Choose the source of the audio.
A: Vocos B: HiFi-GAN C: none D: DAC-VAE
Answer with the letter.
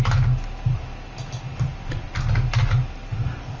C